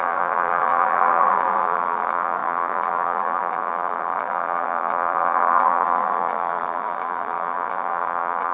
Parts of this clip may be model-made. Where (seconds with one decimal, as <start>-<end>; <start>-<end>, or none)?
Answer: 0.0-8.5